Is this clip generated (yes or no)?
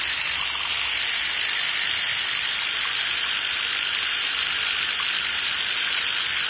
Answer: no